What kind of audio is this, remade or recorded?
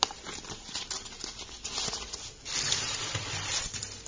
recorded